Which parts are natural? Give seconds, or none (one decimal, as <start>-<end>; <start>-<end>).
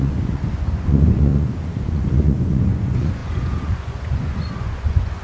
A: none